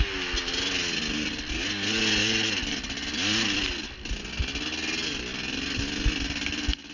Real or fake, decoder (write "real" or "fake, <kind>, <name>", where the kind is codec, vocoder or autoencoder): real